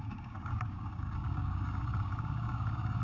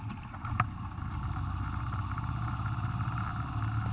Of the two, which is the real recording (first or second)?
second